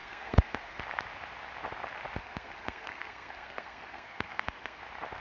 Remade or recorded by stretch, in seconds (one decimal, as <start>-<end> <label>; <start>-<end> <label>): 0.0-0.8 remade; 0.8-2.2 recorded; 2.2-4.8 remade; 4.8-5.2 recorded